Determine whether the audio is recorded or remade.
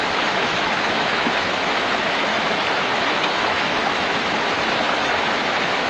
remade